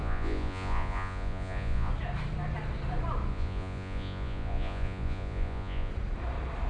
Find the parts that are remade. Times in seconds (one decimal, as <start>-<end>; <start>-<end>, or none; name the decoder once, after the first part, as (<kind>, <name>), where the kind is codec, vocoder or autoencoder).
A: 0.0-1.9 (vocoder, Vocos); 3.3-5.9